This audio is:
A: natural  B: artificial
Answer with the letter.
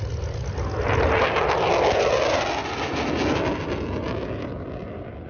A